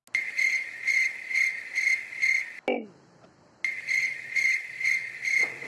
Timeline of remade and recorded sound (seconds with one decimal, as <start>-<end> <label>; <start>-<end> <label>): 0.0-5.7 recorded